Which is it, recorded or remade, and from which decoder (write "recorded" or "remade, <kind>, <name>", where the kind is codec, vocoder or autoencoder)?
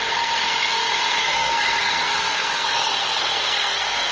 remade, codec, SNAC